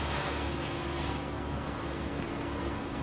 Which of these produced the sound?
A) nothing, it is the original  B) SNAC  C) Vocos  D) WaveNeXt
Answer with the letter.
B